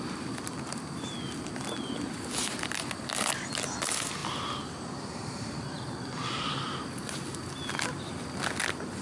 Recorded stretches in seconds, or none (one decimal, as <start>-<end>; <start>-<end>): 0.0-9.0